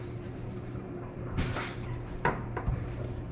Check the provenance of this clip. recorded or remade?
remade